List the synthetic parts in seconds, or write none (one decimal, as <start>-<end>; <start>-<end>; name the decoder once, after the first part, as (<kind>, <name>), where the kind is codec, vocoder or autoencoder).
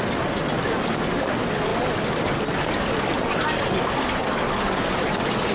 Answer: none